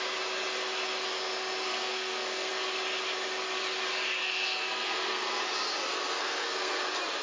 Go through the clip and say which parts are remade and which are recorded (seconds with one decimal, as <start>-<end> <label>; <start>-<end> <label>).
0.0-1.7 recorded; 1.7-2.5 remade; 2.5-4.2 recorded; 4.2-5.4 remade; 5.4-6.2 recorded; 6.2-6.8 remade; 6.8-7.2 recorded